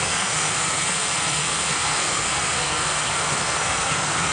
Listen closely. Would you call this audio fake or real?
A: fake